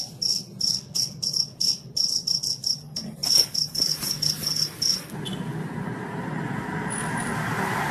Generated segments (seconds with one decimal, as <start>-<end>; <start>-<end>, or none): none